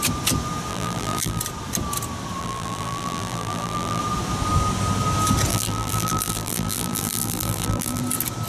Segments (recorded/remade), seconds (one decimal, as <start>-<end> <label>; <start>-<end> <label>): 0.0-0.7 recorded; 0.7-1.4 remade; 1.4-2.4 recorded; 2.4-4.0 remade; 4.0-5.5 recorded; 5.5-8.0 remade; 8.0-8.5 recorded